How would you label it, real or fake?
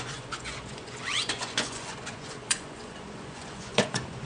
fake